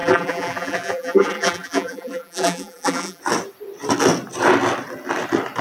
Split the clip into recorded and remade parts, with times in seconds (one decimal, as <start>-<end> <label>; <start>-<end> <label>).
0.0-3.2 remade; 3.2-5.6 recorded